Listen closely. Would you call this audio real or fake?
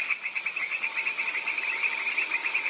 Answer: real